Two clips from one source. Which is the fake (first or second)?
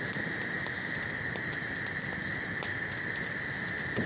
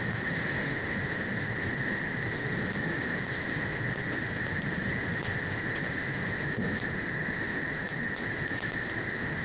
second